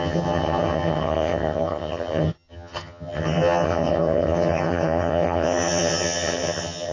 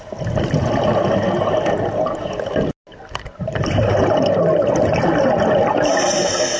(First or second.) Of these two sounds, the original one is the second